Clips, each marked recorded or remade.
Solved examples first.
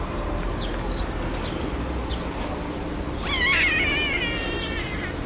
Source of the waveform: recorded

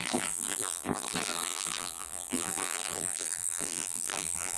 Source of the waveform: remade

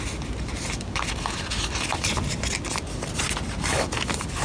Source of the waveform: recorded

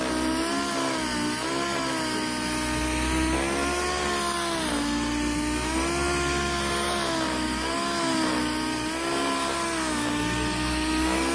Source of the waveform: recorded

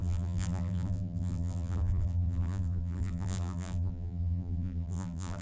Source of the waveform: remade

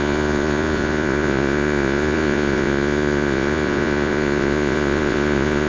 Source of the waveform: remade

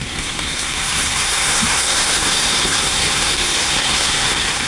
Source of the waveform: remade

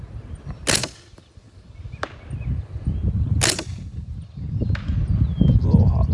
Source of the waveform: recorded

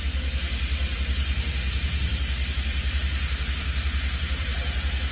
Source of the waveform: remade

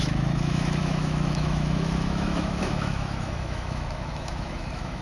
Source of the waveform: remade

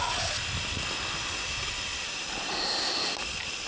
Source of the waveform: recorded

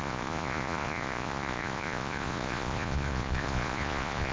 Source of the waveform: remade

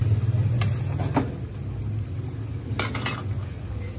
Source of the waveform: recorded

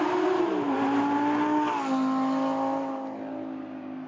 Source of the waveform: recorded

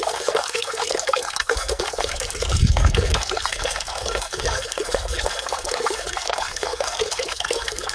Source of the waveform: remade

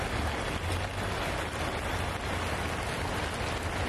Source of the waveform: recorded